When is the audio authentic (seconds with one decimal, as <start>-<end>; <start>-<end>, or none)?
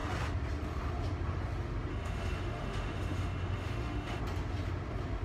0.0-1.9; 4.2-5.2